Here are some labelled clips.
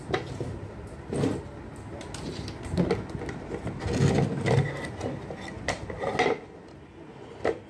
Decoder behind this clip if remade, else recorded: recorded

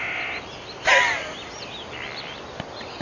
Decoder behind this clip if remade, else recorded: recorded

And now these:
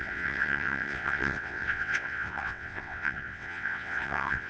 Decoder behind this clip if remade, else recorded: remade, vocoder, WaveNeXt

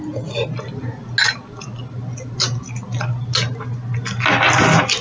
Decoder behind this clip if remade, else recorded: recorded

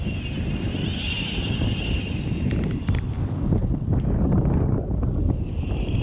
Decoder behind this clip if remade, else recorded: recorded